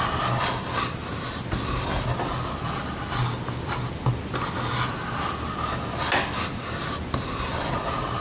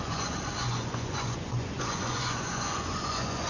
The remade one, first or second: second